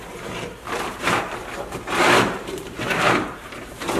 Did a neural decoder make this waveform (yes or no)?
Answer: yes